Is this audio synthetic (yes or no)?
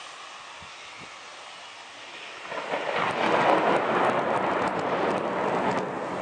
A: no